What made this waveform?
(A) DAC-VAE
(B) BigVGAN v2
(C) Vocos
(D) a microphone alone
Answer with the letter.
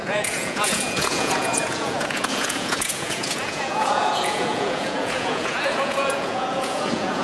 C